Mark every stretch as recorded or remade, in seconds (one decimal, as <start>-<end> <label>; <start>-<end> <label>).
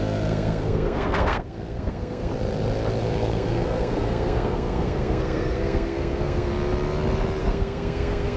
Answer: 0.0-2.3 remade; 2.3-3.0 recorded; 3.0-6.5 remade; 6.5-7.4 recorded; 7.4-8.4 remade